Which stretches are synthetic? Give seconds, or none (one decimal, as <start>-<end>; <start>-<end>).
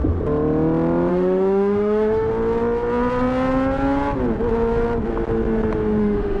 1.1-2.3; 6.0-6.4